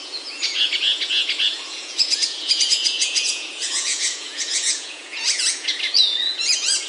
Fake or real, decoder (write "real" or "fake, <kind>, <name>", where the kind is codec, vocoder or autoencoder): fake, vocoder, Vocos